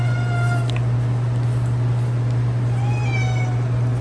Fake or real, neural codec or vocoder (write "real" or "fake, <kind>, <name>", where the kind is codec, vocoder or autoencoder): real